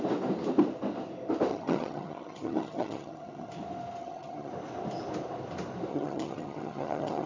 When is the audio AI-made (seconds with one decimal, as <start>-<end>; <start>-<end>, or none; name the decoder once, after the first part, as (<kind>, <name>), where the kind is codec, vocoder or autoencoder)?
1.5-3.5 (vocoder, HiFi-GAN); 4.0-4.5; 5.9-7.3